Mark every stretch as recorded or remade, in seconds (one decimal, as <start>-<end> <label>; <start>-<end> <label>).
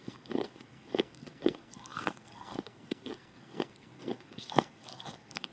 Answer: 0.0-5.5 remade